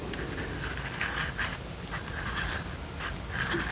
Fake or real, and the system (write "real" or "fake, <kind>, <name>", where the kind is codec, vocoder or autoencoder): real